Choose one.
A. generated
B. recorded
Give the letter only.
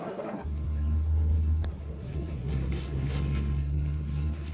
A